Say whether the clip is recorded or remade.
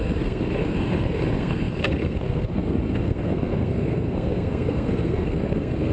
remade